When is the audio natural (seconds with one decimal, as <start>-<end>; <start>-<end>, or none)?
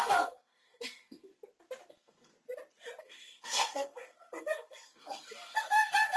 1.3-1.9; 2.3-3.0